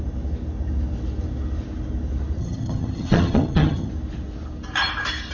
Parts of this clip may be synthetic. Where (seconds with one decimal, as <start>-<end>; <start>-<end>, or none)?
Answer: 2.4-3.9